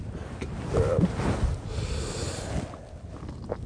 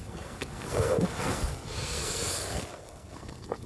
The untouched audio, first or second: first